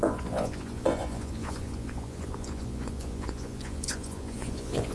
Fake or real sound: fake